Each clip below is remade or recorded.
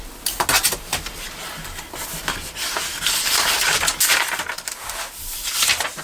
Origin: recorded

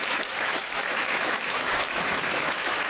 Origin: remade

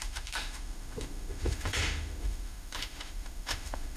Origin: remade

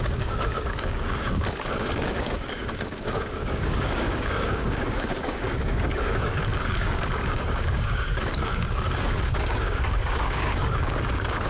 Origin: remade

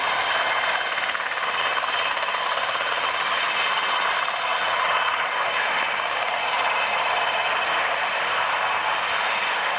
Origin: recorded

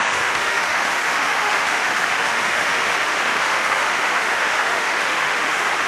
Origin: remade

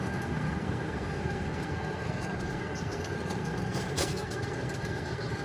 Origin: remade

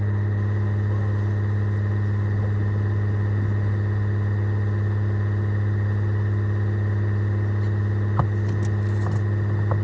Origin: recorded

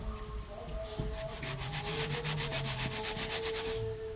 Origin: recorded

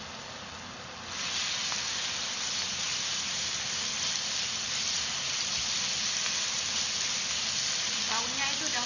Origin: recorded